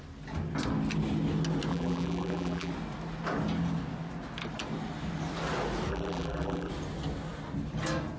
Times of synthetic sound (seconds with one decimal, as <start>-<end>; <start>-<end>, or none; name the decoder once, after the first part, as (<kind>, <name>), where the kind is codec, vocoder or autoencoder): 1.7-2.7 (vocoder, BigVGAN v2); 5.9-6.7

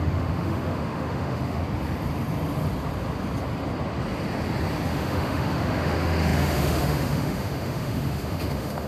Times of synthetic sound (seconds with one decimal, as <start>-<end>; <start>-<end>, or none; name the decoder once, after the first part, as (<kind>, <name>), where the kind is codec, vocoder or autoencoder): 0.0-1.6 (autoencoder, DAC-VAE); 4.9-8.9

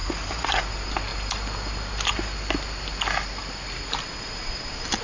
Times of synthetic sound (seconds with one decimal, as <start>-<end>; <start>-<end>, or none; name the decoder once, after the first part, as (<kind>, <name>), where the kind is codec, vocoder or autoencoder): 0.0-0.6 (vocoder, Vocos)

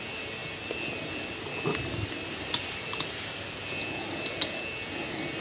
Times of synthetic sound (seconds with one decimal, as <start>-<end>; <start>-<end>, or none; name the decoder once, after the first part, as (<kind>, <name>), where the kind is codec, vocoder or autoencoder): none

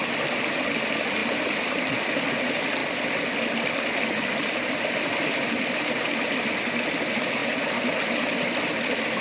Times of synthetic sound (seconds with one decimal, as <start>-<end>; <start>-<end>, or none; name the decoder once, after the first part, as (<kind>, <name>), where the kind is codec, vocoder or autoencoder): 1.2-2.0 (vocoder, BigVGAN v2); 2.8-6.5; 7.4-8.1

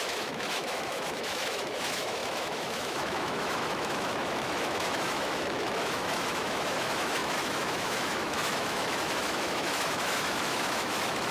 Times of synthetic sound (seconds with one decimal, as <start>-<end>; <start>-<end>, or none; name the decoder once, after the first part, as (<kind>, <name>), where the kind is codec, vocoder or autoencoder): 0.0-11.3 (autoencoder, DAC-VAE)

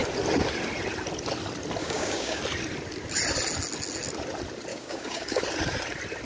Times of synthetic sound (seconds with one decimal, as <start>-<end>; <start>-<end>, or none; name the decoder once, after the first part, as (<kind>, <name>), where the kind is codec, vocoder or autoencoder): 1.8-2.4 (codec, DAC); 4.7-5.4